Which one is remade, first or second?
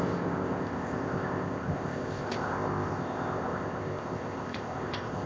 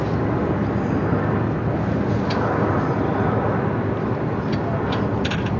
first